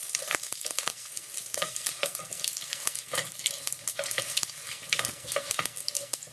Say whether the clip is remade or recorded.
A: remade